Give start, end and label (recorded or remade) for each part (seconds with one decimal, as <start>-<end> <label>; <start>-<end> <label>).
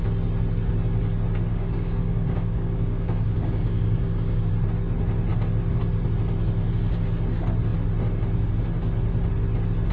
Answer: 0.0-1.5 recorded; 1.5-4.5 remade; 4.5-9.9 recorded